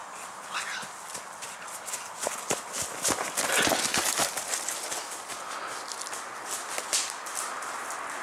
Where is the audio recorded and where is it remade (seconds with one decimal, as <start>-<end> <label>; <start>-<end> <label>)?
0.0-8.2 recorded

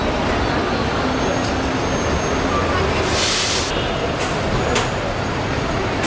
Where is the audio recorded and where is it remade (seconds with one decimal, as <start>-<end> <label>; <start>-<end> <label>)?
0.0-6.1 recorded

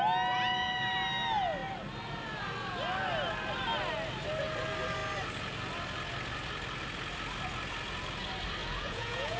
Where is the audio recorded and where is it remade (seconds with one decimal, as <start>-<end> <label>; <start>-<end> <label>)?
0.0-8.6 recorded; 8.6-9.4 remade